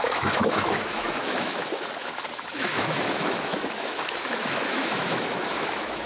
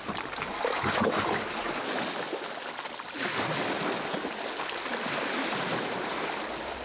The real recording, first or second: second